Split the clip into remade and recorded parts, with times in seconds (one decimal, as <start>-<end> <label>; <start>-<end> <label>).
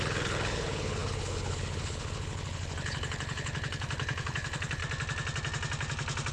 0.0-4.8 remade; 4.8-6.3 recorded